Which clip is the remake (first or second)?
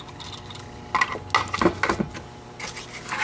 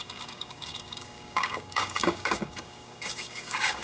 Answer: second